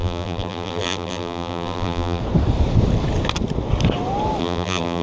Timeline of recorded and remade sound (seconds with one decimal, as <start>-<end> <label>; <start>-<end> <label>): 0.0-2.2 remade; 2.2-4.4 recorded; 4.4-5.0 remade